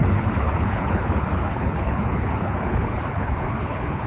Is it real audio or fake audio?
fake